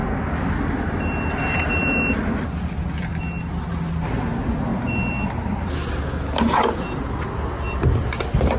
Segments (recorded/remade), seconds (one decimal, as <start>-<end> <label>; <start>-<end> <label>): 0.0-8.6 recorded